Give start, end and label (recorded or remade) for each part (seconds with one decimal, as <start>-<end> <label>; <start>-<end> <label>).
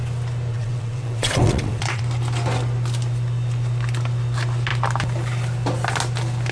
0.0-0.5 recorded; 0.5-2.0 remade; 2.0-6.5 recorded